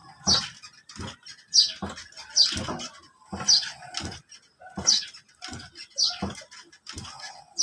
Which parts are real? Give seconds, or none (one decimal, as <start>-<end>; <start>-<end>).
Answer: 0.0-7.6